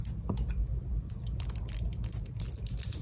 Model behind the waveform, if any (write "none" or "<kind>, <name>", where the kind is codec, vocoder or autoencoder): none